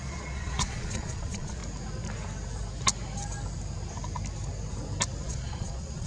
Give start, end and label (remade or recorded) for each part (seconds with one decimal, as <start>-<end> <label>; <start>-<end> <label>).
0.0-1.6 remade; 1.6-5.2 recorded; 5.2-6.1 remade